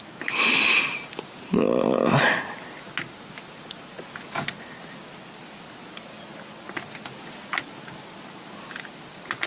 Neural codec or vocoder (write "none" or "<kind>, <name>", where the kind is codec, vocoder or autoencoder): none